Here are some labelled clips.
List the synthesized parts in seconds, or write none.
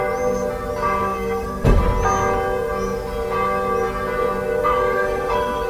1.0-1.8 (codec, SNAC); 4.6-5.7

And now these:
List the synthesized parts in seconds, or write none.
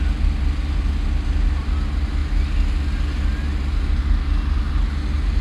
none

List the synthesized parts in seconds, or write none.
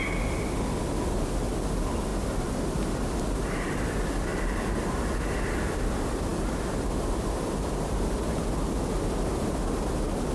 4.3-5.1 (vocoder, BigVGAN v2)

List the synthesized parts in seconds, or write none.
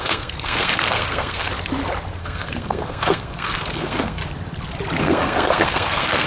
0.0-1.5 (codec, SNAC); 2.2-4.2; 5.0-6.3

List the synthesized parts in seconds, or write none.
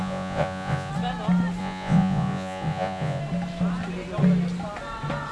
0.0-0.9 (vocoder, Vocos); 1.6-3.2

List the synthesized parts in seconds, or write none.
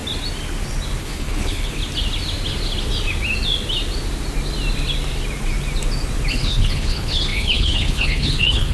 1.0-1.8 (codec, HILCodec); 6.3-8.7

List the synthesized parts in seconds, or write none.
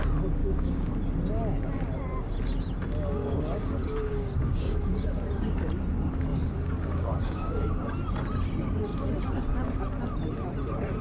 0.4-0.9 (codec, DAC); 3.2-4.8; 6.3-7.9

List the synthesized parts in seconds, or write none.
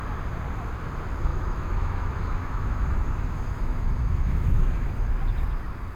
1.3-4.9 (autoencoder, DAC-VAE)